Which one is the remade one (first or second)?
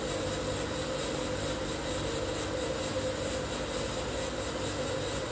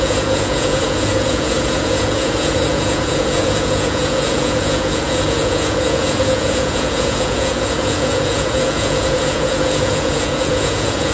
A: second